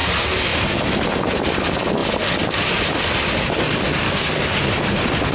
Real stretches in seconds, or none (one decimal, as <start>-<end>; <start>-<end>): 0.0-5.3